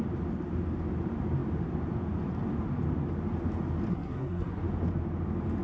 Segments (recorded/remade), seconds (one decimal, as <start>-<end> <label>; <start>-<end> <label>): 0.0-3.9 recorded; 3.9-4.6 remade; 4.6-5.6 recorded